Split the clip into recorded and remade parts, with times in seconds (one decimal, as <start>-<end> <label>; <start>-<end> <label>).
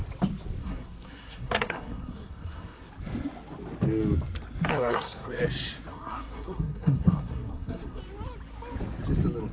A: 0.0-0.6 recorded; 0.6-2.9 remade; 2.9-4.7 recorded; 4.7-5.4 remade; 5.4-5.9 recorded; 5.9-8.0 remade; 8.0-9.5 recorded